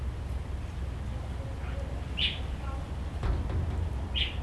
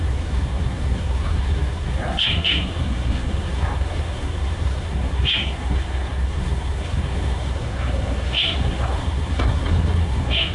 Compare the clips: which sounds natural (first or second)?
first